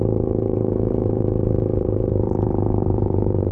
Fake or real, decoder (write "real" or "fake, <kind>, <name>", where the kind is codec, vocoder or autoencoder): fake, vocoder, BigVGAN v2